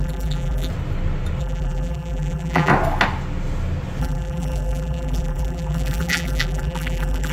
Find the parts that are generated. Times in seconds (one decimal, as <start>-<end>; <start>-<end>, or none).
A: 0.0-0.7; 1.4-2.7; 4.0-7.3

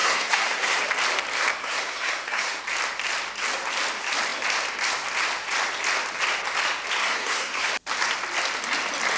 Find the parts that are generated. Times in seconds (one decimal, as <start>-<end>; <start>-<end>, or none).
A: 0.0-0.8; 1.5-2.6; 7.0-7.7

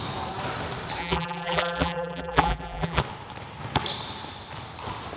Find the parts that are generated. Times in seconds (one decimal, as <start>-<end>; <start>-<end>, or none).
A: 1.0-3.0

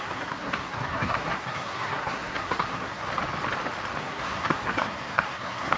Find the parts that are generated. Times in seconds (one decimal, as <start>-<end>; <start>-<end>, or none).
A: 0.0-3.0; 4.0-5.8